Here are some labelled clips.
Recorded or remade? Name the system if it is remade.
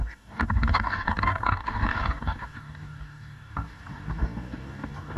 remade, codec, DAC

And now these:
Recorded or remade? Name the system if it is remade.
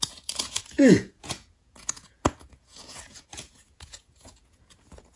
remade, vocoder, Vocos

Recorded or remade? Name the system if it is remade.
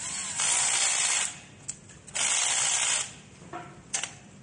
recorded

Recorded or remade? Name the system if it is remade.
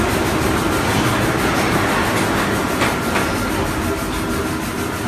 recorded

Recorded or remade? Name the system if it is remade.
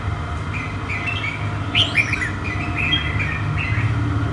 recorded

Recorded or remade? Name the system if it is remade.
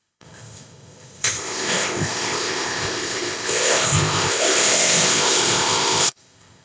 remade, codec, ZipCodec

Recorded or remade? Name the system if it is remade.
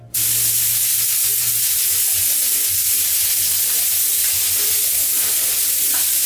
recorded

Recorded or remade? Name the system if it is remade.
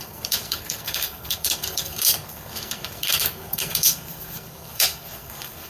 remade, codec, SNAC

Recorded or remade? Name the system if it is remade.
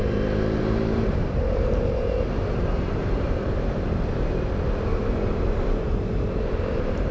remade, vocoder, BigVGAN v2